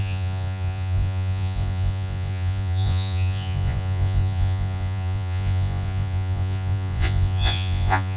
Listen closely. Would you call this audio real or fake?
fake